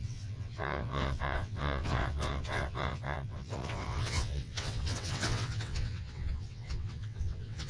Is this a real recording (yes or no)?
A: no